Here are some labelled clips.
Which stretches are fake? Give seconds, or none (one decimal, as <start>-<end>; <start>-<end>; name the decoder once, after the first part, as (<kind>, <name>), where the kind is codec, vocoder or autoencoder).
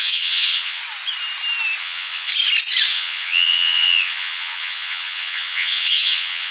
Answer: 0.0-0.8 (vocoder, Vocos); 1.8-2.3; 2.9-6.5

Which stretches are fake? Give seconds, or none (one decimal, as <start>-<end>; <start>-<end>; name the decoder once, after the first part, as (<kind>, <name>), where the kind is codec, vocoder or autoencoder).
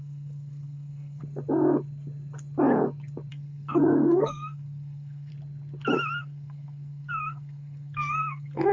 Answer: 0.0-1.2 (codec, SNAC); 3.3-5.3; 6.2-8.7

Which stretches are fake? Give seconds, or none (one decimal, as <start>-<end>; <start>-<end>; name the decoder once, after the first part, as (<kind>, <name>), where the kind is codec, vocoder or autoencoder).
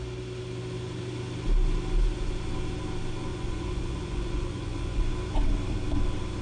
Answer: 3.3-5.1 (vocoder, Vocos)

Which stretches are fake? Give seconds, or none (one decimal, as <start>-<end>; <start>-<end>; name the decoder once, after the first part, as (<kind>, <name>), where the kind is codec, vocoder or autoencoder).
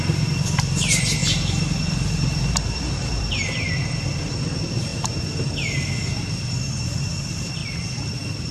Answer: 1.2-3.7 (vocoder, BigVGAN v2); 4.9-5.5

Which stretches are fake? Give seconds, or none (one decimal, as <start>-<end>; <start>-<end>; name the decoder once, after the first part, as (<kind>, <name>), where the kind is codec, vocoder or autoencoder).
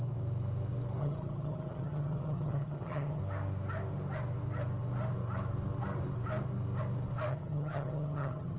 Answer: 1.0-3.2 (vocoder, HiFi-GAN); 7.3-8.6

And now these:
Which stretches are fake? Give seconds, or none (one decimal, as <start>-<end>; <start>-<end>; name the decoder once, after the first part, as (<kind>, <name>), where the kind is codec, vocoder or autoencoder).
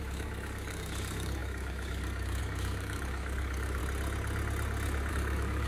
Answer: 0.0-3.8 (codec, DAC); 5.1-5.7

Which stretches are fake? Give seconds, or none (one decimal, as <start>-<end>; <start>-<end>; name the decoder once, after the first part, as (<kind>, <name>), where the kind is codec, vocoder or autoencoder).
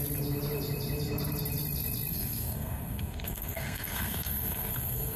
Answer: 2.1-5.2 (codec, SNAC)